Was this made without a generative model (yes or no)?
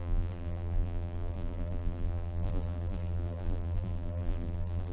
no